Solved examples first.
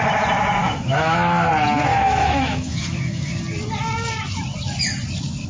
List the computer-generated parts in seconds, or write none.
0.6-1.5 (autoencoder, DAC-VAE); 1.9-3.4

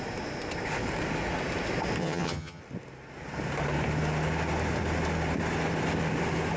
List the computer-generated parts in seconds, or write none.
2.0-2.6 (vocoder, HiFi-GAN)

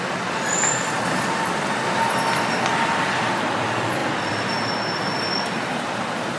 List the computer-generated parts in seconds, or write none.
4.0-5.5 (vocoder, BigVGAN v2)

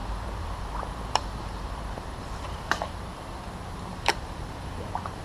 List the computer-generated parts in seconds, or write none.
0.0-2.9 (vocoder, BigVGAN v2); 3.9-5.2

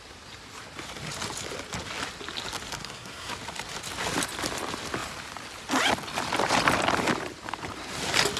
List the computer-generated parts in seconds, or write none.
2.8-3.3 (codec, SNAC)